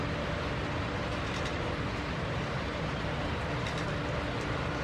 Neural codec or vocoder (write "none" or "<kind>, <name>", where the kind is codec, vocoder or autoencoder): none